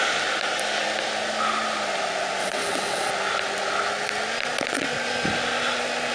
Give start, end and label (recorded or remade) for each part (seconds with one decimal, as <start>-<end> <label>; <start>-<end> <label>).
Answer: 0.0-2.4 recorded; 2.4-3.1 remade; 3.1-6.1 recorded